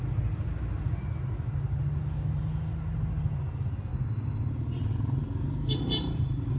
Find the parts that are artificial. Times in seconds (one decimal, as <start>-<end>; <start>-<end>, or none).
3.9-4.5